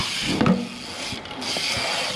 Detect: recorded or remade recorded